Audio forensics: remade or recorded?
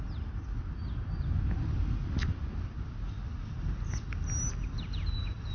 recorded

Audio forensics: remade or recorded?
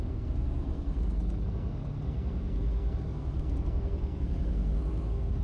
remade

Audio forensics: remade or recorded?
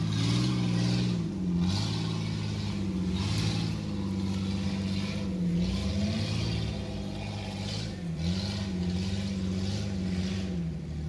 recorded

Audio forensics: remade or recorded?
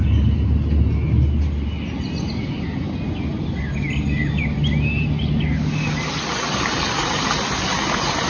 recorded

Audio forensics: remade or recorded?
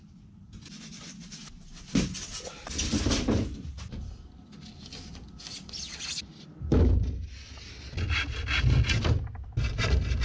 recorded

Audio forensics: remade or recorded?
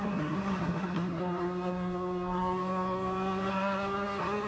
remade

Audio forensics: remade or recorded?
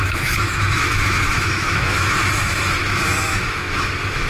remade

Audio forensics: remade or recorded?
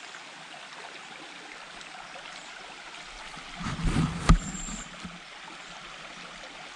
recorded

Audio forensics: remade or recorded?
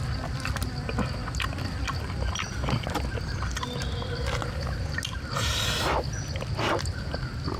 recorded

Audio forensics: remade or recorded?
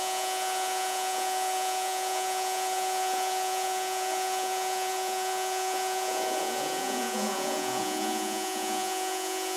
remade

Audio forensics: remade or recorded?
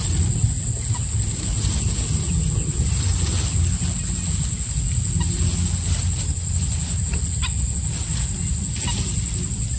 recorded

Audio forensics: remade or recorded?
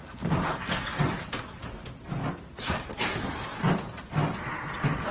recorded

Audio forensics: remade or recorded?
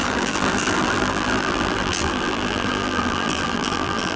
remade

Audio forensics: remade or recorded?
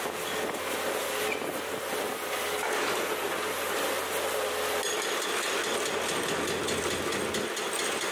recorded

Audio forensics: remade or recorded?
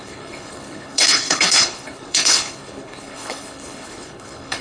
remade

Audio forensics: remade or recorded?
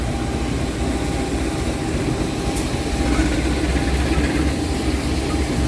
recorded